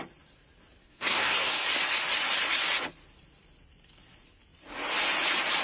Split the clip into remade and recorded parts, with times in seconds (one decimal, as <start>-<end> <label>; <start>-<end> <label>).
0.0-0.8 recorded; 0.8-1.6 remade; 1.6-5.6 recorded